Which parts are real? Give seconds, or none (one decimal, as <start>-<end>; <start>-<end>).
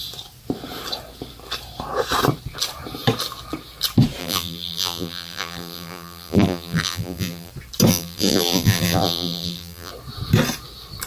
0.0-4.2; 7.5-7.9; 9.9-11.1